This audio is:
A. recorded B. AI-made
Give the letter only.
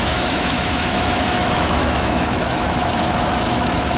B